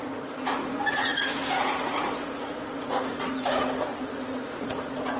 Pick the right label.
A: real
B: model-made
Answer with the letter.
B